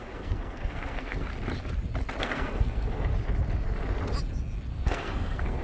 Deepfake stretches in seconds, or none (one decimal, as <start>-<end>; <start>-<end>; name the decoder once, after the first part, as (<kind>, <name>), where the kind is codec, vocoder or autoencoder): 0.0-1.3 (codec, SNAC); 2.2-3.1; 4.7-5.6